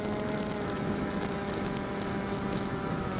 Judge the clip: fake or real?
fake